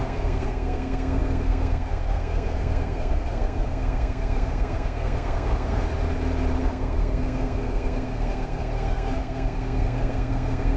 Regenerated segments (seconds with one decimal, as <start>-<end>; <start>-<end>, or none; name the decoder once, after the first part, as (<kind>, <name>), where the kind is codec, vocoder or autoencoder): 0.0-5.8 (codec, SNAC); 6.6-10.8